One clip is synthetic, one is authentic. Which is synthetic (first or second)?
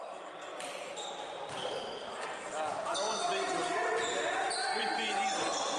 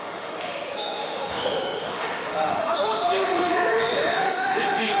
second